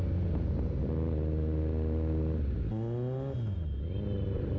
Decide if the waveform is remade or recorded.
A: recorded